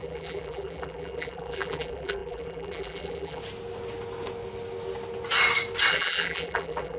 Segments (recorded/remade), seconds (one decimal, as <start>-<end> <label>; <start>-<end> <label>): 0.0-3.4 remade; 3.4-5.9 recorded; 5.9-7.0 remade